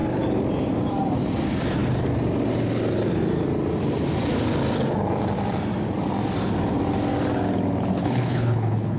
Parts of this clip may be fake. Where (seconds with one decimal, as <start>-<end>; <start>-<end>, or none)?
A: 7.9-9.0